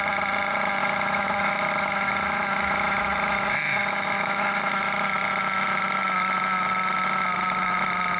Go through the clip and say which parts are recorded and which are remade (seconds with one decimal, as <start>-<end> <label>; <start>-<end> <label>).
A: 0.0-0.8 recorded; 0.8-4.8 remade; 4.8-8.2 recorded